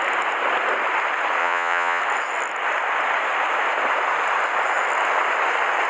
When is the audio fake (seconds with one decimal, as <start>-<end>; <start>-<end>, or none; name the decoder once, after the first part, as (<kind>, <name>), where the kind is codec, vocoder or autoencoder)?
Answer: 1.4-2.0 (vocoder, Vocos)